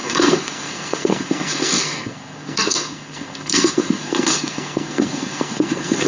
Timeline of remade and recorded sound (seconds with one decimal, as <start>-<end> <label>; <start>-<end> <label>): 0.0-6.1 remade